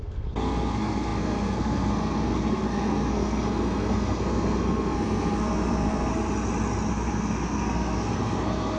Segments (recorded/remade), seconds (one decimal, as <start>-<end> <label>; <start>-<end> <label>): 0.0-6.1 remade; 6.1-6.9 recorded; 6.9-8.8 remade